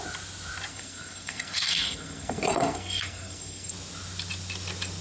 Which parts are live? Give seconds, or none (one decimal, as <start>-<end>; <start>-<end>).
0.0-0.7; 3.7-5.0